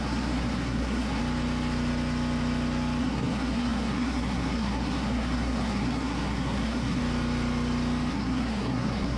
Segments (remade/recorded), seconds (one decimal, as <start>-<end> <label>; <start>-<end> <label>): 0.0-1.2 remade; 1.2-3.0 recorded; 3.0-7.0 remade; 7.0-8.1 recorded; 8.1-9.2 remade